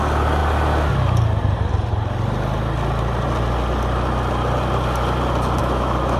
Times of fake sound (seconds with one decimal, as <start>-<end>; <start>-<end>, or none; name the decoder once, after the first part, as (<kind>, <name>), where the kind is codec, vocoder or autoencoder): 5.6-6.2 (autoencoder, DAC-VAE)